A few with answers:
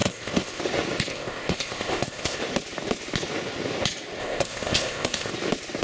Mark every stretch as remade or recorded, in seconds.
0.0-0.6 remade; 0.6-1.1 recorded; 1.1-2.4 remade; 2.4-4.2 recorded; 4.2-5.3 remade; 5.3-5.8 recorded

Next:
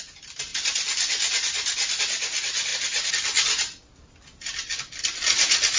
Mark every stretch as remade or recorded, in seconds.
0.0-5.8 recorded

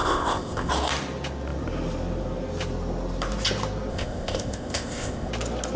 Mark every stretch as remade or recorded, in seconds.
0.0-0.7 remade; 0.7-3.9 recorded; 3.9-5.3 remade; 5.3-5.8 recorded

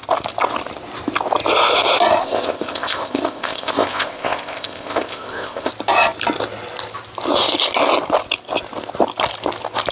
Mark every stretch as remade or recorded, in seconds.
0.0-2.2 recorded; 2.2-5.7 remade; 5.7-9.9 recorded

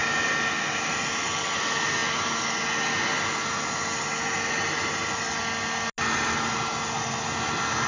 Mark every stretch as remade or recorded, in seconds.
0.0-7.9 recorded

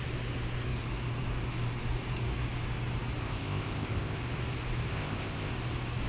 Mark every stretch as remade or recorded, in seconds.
0.0-3.2 recorded; 3.2-4.2 remade; 4.2-4.9 recorded; 4.9-5.5 remade; 5.5-6.1 recorded